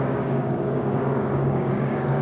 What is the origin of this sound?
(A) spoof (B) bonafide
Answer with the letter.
A